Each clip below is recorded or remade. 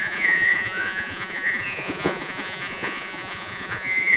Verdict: remade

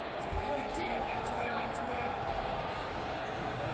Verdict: remade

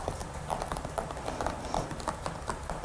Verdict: recorded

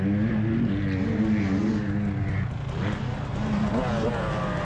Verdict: recorded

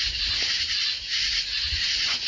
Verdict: recorded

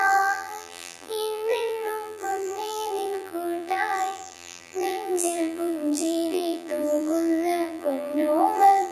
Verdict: remade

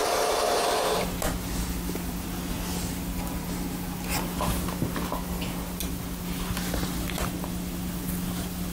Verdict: recorded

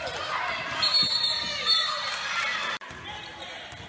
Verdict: recorded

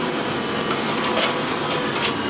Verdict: recorded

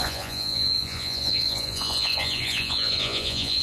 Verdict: remade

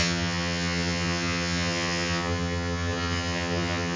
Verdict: remade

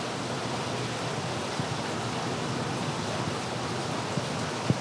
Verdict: recorded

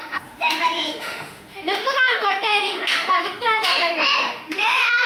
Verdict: remade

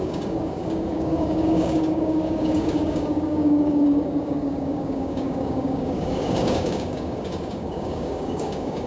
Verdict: remade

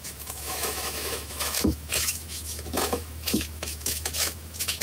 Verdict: remade